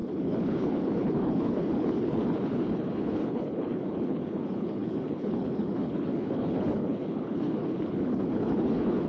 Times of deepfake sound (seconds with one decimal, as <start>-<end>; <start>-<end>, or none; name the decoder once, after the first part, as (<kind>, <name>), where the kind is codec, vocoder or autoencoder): 0.0-9.1 (codec, HILCodec)